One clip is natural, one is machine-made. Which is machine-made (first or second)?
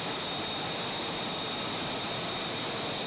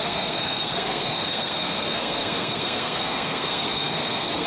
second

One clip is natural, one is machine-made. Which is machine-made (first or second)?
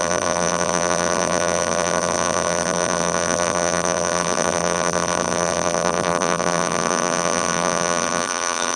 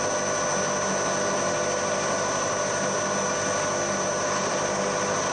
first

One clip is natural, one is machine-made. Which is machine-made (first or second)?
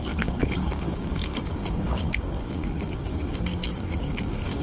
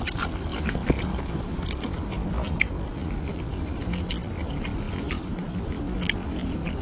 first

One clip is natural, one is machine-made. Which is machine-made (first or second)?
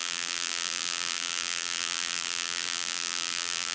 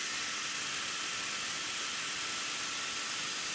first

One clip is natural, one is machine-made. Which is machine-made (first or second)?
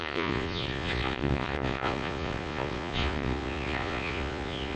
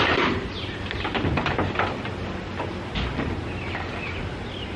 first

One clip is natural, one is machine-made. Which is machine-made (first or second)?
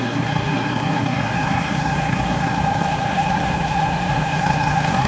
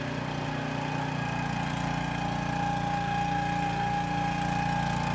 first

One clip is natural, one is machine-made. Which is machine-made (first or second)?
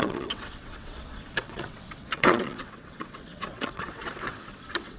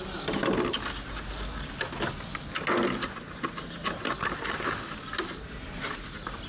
first